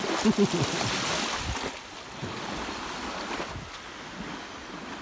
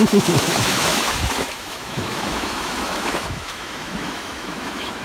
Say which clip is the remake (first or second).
second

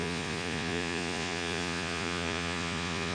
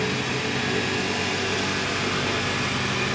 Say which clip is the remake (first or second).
first